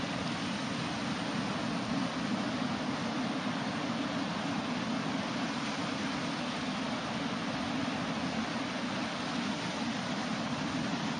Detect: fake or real real